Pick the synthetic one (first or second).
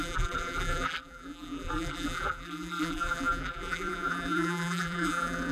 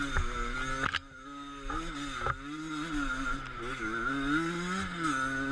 first